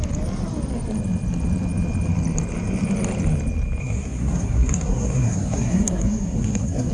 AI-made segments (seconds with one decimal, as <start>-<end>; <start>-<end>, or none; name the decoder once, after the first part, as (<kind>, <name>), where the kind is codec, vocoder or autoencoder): 3.8-6.9 (codec, SNAC)

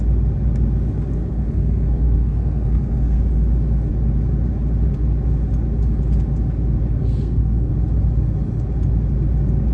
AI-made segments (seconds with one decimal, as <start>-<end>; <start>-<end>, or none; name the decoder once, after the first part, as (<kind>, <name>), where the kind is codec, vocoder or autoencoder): 1.2-3.2 (codec, SNAC); 7.0-7.7

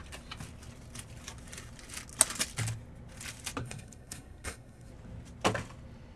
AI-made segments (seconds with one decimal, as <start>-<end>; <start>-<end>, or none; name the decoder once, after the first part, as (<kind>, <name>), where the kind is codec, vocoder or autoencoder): 3.6-4.9 (codec, SNAC)

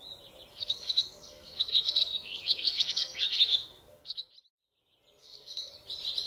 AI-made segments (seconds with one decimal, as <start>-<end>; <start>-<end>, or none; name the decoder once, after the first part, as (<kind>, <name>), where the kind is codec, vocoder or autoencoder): 0.5-4.3 (codec, SNAC); 5.2-5.7

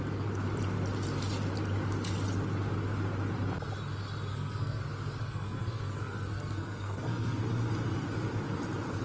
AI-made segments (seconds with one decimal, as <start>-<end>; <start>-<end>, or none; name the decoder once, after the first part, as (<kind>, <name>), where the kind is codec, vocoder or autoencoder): 4.3-4.8 (codec, SNAC); 5.2-7.4

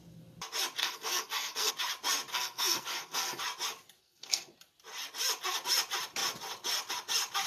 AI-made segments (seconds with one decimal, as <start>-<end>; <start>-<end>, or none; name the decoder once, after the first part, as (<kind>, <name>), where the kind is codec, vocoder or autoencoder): 0.8-1.7 (codec, SNAC); 2.3-3.4; 4.0-4.5

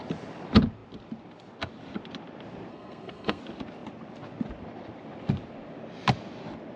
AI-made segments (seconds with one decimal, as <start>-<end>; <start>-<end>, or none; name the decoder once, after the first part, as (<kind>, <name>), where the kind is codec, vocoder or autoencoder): 2.7-3.4 (codec, SNAC)